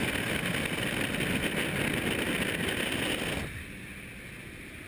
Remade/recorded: recorded